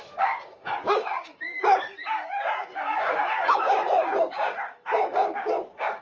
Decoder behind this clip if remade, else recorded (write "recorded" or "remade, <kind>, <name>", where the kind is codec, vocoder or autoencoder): remade, codec, DAC